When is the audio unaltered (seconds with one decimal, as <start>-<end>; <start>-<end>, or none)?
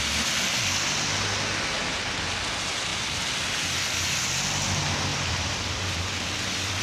0.0-5.1